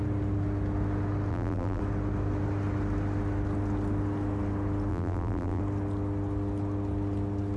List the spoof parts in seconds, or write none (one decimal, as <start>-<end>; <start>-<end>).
1.3-1.8; 4.9-5.6